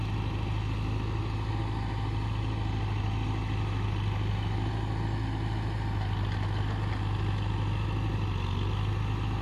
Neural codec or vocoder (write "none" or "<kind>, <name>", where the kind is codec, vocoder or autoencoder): none